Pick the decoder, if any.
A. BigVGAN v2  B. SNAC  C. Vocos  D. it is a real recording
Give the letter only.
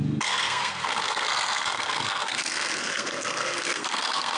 B